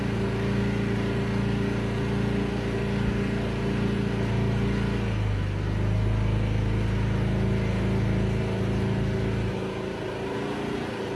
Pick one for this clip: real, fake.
real